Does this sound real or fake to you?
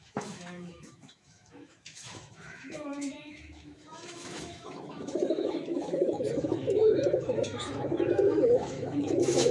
fake